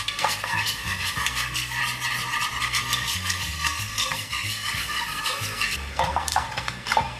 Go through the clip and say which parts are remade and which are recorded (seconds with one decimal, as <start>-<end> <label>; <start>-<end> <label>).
0.0-1.8 remade; 1.8-2.6 recorded; 2.6-7.2 remade